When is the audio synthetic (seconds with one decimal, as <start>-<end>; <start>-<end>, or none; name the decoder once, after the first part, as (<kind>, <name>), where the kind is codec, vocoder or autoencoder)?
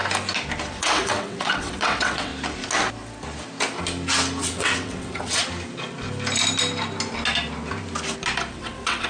0.7-2.3 (vocoder, WaveNeXt); 4.4-5.4; 8.5-9.1